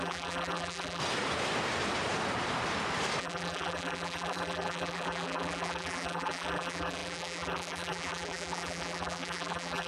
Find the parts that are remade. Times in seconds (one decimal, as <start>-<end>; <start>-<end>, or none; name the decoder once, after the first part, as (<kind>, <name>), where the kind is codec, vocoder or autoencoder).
0.0-1.0 (vocoder, BigVGAN v2); 3.2-9.9